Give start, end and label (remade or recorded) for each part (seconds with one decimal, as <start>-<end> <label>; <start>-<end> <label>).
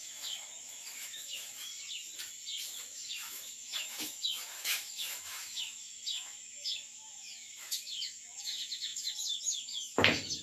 0.0-1.7 remade; 1.7-2.8 recorded; 2.8-10.4 remade